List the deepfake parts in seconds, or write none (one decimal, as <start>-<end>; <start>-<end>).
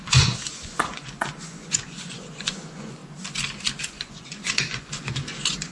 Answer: 0.0-3.0; 3.8-5.7